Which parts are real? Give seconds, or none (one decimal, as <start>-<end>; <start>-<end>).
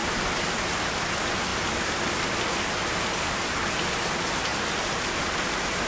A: 1.1-1.5; 2.4-4.5; 5.2-5.9